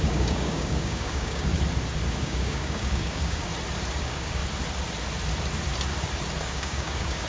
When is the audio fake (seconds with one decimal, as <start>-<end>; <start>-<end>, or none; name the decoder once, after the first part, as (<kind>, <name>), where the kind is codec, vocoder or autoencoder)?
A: 0.0-1.5 (codec, DAC); 2.1-3.5; 4.0-4.4; 6.4-7.3